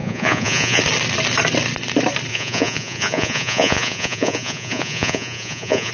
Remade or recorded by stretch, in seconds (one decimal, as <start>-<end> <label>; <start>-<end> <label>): 0.0-0.8 remade; 0.8-2.3 recorded; 2.3-5.9 remade